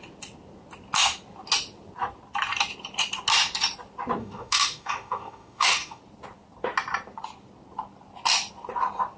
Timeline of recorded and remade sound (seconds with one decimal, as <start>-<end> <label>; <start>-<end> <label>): 0.0-4.2 recorded; 4.2-6.0 remade; 6.0-9.2 recorded